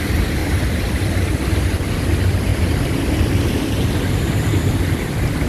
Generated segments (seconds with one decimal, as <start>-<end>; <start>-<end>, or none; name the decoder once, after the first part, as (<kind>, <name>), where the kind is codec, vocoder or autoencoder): 0.4-1.5 (vocoder, BigVGAN v2); 2.5-5.5